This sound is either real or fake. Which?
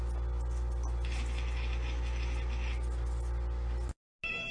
real